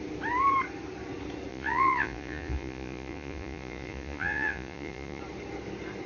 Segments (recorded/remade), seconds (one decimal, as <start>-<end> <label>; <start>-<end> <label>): 0.0-1.5 recorded; 1.5-5.2 remade; 5.2-6.1 recorded